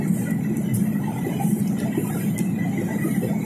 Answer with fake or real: real